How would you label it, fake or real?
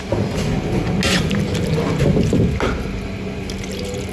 real